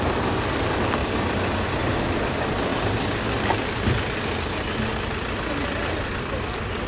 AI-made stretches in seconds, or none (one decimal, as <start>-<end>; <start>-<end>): none